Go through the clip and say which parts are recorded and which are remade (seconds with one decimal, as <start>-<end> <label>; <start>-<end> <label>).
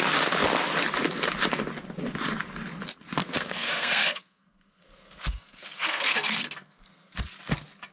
0.0-3.2 recorded; 3.2-7.2 remade; 7.2-7.9 recorded